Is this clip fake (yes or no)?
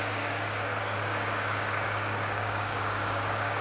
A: yes